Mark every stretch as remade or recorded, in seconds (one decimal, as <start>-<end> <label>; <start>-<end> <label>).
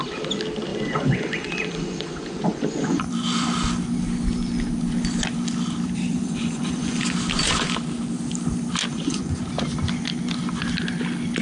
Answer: 0.0-0.7 recorded; 0.7-3.1 remade; 3.1-6.1 recorded; 6.1-7.0 remade; 7.0-8.9 recorded; 8.9-9.4 remade; 9.4-11.4 recorded